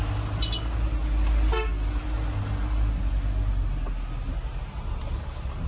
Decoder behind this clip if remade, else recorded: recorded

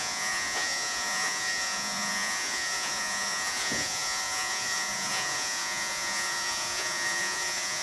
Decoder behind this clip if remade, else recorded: remade, vocoder, Vocos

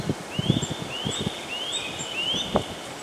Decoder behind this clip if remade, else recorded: recorded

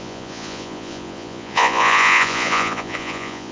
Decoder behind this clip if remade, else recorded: remade, vocoder, Vocos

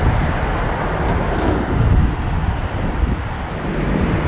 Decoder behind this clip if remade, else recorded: recorded